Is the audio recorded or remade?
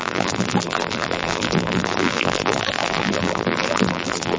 remade